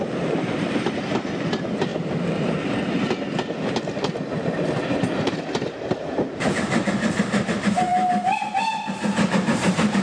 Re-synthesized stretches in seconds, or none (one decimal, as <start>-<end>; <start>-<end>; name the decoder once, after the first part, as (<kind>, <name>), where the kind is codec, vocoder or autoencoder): 0.0-1.9 (vocoder, BigVGAN v2); 4.9-10.0